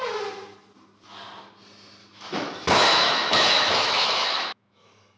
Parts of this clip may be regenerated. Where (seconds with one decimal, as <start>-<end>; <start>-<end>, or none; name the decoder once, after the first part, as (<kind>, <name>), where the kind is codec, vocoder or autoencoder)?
2.0-5.2 (autoencoder, DAC-VAE)